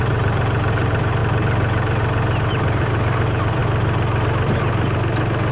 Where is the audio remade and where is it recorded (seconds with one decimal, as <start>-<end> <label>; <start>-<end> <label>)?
0.0-1.2 remade; 1.2-2.5 recorded; 2.5-3.6 remade; 3.6-5.5 recorded